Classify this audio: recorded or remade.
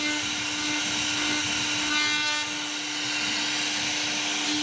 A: recorded